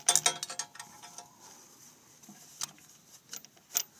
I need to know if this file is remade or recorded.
recorded